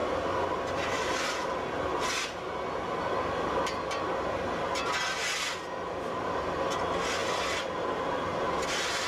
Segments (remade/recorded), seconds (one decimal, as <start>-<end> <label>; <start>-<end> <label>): 0.0-9.1 recorded